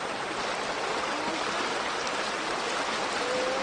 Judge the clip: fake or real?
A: real